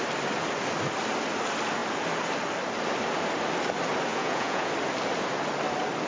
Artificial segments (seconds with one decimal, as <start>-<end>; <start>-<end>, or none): 4.1-4.7